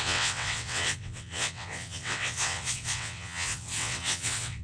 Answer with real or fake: fake